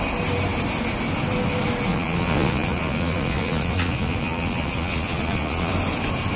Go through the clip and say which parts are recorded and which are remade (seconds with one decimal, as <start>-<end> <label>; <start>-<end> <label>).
0.0-1.9 recorded; 1.9-5.7 remade; 5.7-6.4 recorded